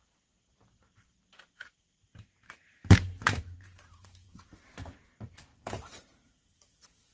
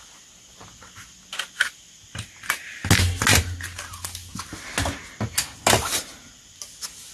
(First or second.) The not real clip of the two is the first